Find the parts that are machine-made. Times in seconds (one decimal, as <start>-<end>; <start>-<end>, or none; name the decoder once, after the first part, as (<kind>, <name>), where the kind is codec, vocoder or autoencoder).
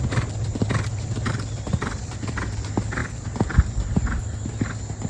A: none